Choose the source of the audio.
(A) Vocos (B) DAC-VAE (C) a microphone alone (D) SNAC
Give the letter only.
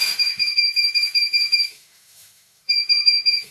B